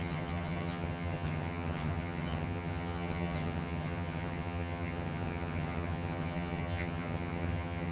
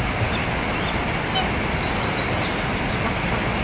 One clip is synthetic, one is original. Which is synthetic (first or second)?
first